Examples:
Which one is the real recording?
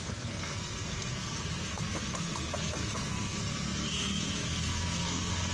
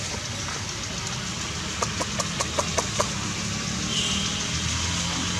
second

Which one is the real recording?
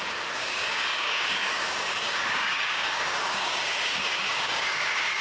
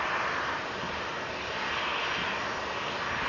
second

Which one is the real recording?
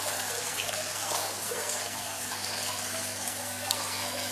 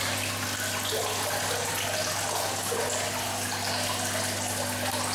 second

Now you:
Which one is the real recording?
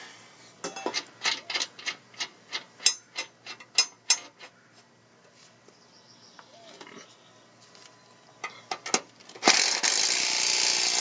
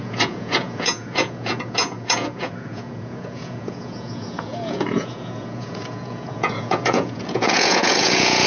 first